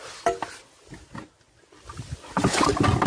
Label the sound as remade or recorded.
recorded